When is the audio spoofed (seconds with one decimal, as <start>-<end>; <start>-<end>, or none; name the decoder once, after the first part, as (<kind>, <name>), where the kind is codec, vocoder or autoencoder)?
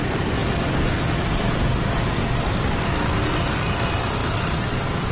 4.2-5.1 (vocoder, BigVGAN v2)